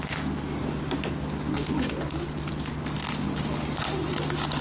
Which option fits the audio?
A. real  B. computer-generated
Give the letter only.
A